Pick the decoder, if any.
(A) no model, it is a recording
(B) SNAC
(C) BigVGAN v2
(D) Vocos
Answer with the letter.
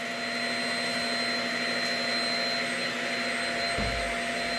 A